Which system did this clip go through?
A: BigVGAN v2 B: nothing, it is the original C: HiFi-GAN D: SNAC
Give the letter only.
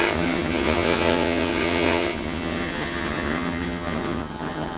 C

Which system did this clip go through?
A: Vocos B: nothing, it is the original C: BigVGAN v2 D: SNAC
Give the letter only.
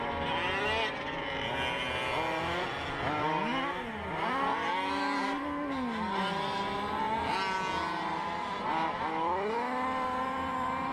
B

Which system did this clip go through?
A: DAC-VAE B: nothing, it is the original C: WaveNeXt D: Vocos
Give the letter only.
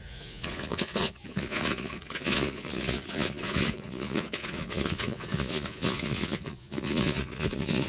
D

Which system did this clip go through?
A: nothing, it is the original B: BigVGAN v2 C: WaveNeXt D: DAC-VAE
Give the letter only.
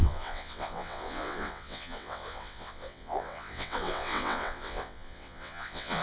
C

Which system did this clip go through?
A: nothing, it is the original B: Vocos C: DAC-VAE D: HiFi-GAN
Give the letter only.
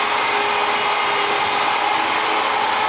A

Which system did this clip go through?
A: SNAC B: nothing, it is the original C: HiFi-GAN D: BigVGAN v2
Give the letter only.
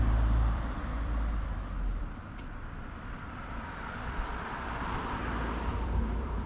D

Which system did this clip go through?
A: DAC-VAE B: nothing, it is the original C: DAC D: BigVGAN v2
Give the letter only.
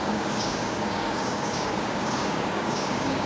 C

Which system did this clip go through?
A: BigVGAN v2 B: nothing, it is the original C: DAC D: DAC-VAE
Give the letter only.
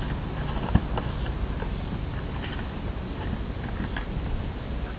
B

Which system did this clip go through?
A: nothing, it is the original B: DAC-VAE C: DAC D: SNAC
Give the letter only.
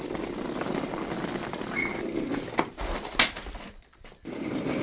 A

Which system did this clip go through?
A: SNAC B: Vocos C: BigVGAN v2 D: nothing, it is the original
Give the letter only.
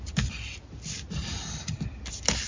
D